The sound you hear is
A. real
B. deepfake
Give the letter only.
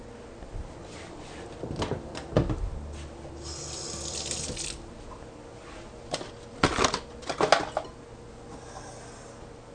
A